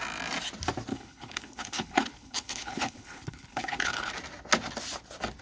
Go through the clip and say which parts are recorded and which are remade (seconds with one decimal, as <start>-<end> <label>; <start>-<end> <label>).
0.0-0.9 recorded; 0.9-4.1 remade; 4.1-5.4 recorded